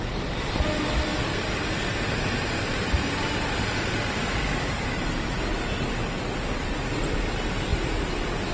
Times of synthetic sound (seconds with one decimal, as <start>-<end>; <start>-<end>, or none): 1.1-6.2